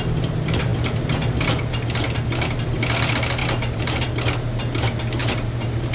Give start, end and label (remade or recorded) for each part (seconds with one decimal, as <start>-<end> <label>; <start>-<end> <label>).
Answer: 0.0-3.4 recorded; 3.4-4.1 remade; 4.1-5.2 recorded; 5.2-5.9 remade